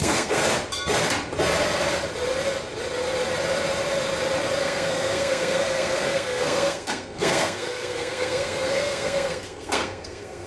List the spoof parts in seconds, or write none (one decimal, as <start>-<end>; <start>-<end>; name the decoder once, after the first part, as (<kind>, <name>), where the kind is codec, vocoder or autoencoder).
0.0-0.4 (codec, SNAC); 4.6-10.5